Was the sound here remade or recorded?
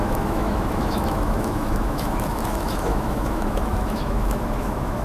remade